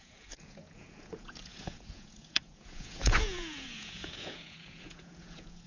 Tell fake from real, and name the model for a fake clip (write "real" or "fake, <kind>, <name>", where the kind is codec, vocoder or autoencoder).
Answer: fake, vocoder, Vocos